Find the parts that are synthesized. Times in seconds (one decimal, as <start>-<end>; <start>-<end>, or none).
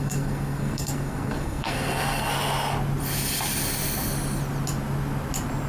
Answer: 0.0-2.3